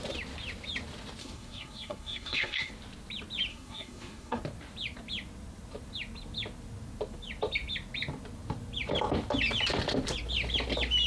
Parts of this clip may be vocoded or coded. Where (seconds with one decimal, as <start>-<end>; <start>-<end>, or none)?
1.2-2.7; 3.5-4.4